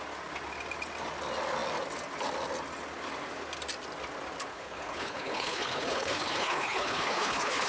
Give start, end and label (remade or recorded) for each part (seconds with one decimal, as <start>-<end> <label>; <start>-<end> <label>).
0.0-4.5 recorded; 4.5-7.7 remade